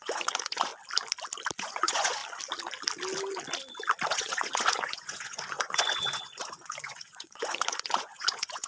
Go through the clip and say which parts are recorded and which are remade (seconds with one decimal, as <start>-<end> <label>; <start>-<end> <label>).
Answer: 0.0-0.7 remade; 0.7-1.6 recorded; 1.6-2.2 remade; 2.2-4.1 recorded; 4.1-8.7 remade

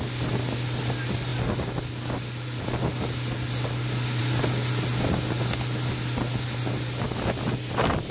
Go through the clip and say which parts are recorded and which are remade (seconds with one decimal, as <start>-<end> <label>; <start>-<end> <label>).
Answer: 0.0-8.1 recorded

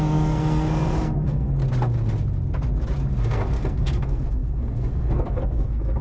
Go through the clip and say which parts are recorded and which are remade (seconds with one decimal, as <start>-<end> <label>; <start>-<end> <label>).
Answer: 0.0-1.6 remade; 1.6-3.1 recorded; 3.1-6.0 remade

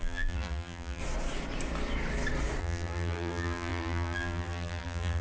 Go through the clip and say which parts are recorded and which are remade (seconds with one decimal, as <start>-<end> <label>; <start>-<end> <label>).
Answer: 0.0-1.0 remade; 1.0-2.6 recorded; 2.6-5.2 remade

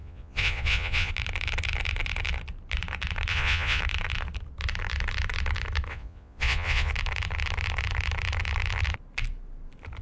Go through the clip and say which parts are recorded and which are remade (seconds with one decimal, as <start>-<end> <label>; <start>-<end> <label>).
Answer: 0.0-1.1 remade; 1.1-3.3 recorded; 3.3-3.8 remade; 3.8-5.9 recorded; 5.9-6.9 remade; 6.9-10.0 recorded

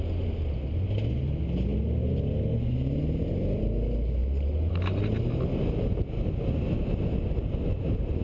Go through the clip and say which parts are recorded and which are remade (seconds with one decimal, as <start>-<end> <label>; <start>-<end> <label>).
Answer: 0.0-8.2 recorded